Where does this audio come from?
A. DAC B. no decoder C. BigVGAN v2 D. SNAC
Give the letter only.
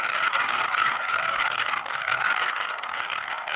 A